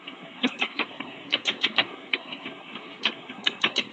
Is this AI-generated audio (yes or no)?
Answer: yes